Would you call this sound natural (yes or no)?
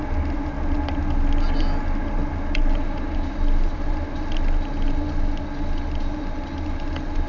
yes